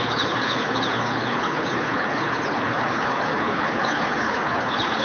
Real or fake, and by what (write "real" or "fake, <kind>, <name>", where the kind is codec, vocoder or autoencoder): fake, codec, HILCodec